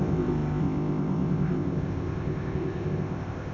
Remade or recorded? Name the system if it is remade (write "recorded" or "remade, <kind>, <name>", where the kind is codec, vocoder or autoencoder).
remade, codec, ZipCodec